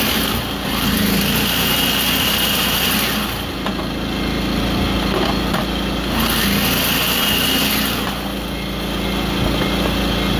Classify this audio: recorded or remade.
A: recorded